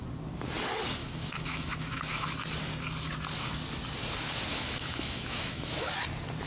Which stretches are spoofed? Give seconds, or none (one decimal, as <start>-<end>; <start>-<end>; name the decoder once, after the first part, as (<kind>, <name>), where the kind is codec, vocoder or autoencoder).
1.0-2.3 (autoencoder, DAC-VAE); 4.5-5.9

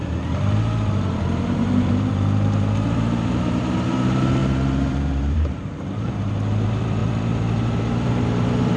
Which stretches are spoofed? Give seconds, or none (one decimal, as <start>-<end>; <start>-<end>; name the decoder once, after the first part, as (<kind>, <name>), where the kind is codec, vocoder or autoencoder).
0.0-8.8 (vocoder, BigVGAN v2)

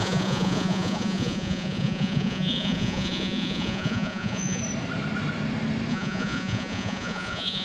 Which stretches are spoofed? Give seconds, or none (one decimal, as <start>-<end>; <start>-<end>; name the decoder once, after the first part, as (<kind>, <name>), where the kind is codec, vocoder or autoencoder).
0.0-4.6 (vocoder, Vocos); 5.9-7.6

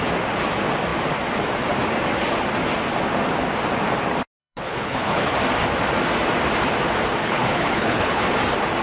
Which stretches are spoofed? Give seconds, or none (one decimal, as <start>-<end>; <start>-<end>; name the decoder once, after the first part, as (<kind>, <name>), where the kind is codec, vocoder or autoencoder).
4.4-5.3 (codec, HILCodec); 7.2-8.2